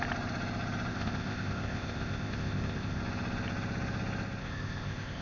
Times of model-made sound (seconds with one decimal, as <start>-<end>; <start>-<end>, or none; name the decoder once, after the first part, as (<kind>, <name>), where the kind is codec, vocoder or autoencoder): 0.9-3.0 (codec, ZipCodec); 4.4-5.2